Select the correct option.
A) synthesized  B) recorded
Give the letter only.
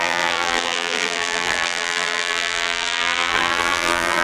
A